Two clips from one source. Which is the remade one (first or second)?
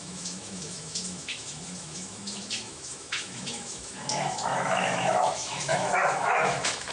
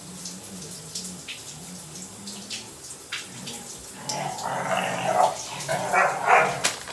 first